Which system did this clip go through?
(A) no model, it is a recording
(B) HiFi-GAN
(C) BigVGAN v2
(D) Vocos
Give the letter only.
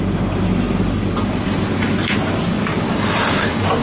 A